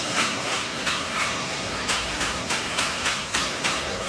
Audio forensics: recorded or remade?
remade